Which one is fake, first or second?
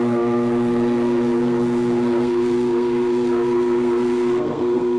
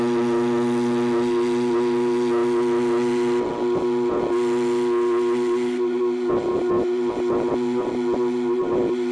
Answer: first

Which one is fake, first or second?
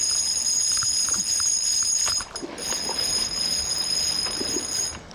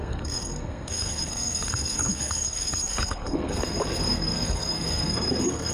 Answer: second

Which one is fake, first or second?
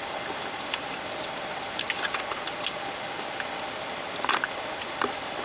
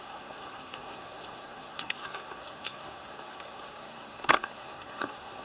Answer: second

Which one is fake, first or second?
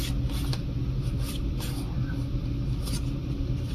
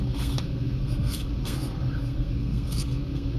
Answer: second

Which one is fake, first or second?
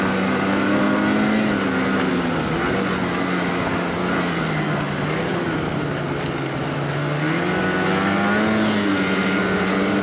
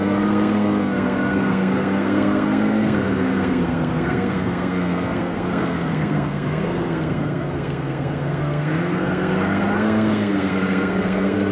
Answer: second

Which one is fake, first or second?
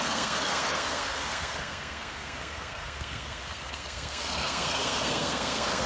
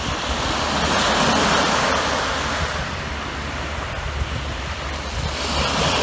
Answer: first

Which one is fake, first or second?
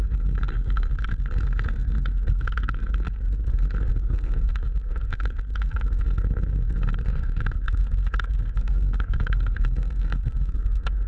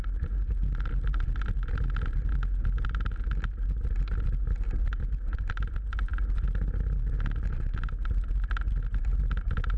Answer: first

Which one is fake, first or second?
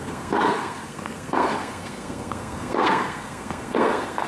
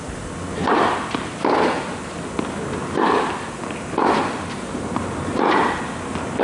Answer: first